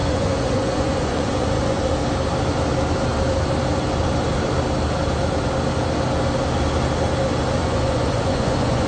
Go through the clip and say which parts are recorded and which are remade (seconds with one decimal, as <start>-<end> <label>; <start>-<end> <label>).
0.0-1.8 remade; 1.8-7.6 recorded; 7.6-8.9 remade